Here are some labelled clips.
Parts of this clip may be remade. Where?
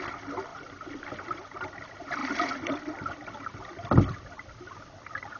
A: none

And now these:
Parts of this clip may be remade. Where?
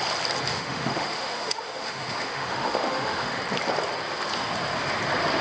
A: 0.5-3.4 (autoencoder, DAC-VAE)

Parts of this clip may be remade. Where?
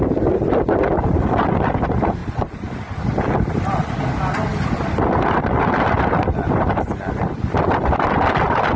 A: 2.2-3.0 (vocoder, BigVGAN v2)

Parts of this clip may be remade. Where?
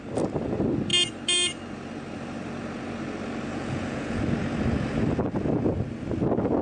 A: 3.5-4.2 (vocoder, Vocos)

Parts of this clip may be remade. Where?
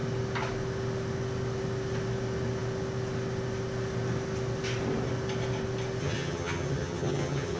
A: 6.0-7.6 (vocoder, HiFi-GAN)